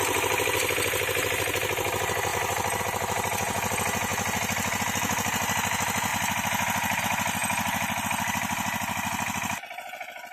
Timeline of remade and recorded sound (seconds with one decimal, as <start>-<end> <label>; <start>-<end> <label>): 0.0-10.3 recorded

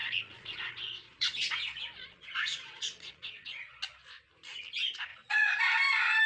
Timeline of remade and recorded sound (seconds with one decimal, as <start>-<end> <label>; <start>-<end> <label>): 0.0-3.8 remade; 3.8-5.1 recorded; 5.1-5.6 remade; 5.6-6.3 recorded

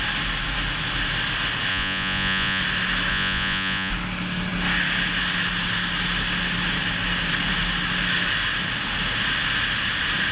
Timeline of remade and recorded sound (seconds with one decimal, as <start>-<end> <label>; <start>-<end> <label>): 0.0-1.7 recorded; 1.7-2.6 remade; 2.6-3.1 recorded; 3.1-3.9 remade; 3.9-10.3 recorded

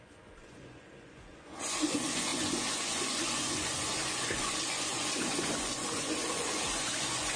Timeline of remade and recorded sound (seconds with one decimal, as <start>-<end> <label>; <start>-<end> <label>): 0.0-7.4 remade

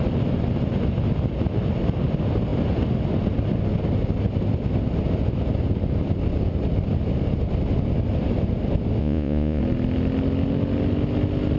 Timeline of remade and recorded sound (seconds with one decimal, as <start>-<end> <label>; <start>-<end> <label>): 0.0-9.0 recorded; 9.0-9.6 remade; 9.6-11.6 recorded

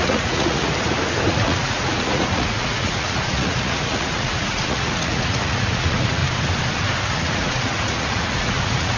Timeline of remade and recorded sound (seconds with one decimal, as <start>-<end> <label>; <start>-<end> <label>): 0.0-0.7 remade; 0.7-1.3 recorded; 1.3-6.2 remade; 6.2-7.0 recorded; 7.0-9.0 remade